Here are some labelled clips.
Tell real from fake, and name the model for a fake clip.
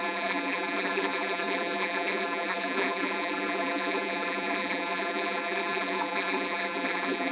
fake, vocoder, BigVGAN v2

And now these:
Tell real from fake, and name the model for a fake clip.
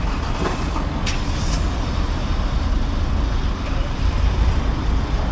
real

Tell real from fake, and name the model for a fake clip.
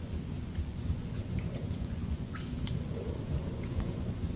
fake, vocoder, Vocos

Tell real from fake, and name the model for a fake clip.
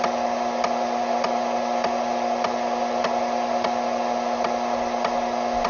real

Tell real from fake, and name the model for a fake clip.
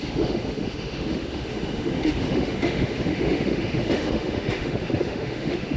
fake, autoencoder, DAC-VAE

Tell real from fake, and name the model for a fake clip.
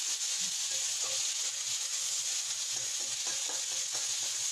fake, vocoder, Vocos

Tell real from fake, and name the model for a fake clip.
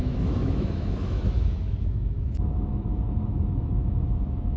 fake, autoencoder, DAC-VAE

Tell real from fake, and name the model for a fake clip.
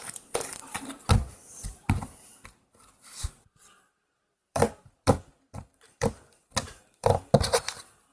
fake, vocoder, BigVGAN v2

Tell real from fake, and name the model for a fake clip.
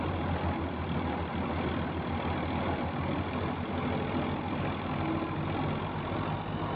real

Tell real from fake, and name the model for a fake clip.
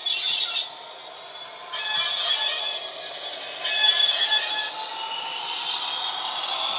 real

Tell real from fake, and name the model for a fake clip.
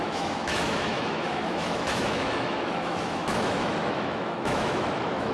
fake, autoencoder, DAC-VAE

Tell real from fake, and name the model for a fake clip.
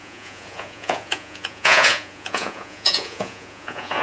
fake, vocoder, Vocos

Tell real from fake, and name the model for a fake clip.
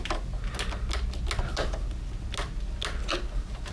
real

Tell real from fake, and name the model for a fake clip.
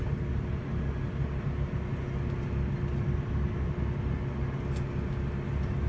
real